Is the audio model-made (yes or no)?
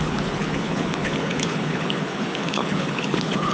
yes